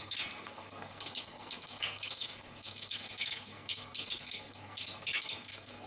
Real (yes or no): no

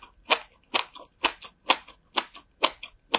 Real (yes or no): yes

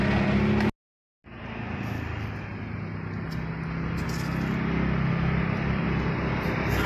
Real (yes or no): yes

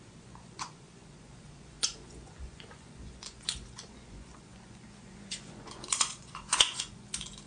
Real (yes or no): no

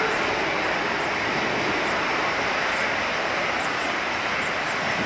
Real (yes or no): yes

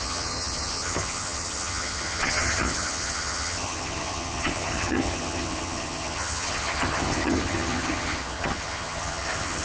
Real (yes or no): no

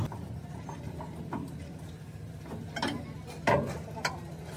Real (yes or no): yes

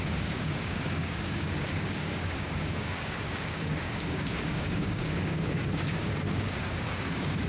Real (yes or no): no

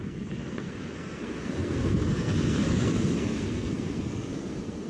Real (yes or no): no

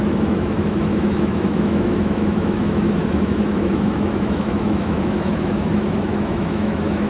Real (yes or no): no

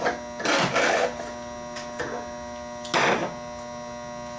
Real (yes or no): yes